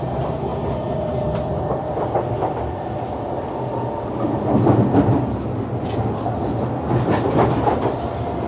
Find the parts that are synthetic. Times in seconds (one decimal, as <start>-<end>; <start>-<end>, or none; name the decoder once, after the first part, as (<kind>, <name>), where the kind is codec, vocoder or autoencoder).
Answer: none